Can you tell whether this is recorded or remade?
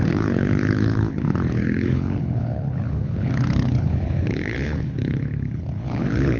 remade